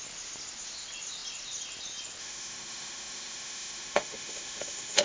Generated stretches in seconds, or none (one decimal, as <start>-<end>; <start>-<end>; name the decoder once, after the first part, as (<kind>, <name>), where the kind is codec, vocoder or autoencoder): 2.2-5.0 (autoencoder, DAC-VAE)